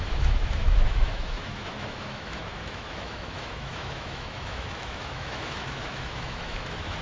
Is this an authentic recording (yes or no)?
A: no